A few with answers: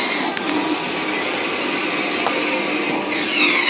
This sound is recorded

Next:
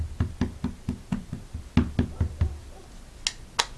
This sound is recorded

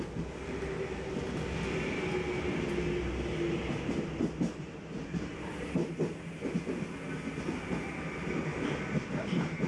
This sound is recorded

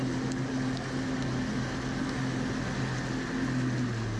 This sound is recorded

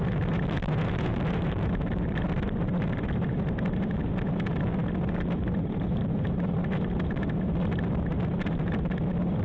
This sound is remade